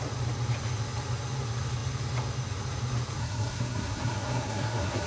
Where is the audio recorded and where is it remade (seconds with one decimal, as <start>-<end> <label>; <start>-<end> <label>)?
0.0-3.2 recorded; 3.2-5.1 remade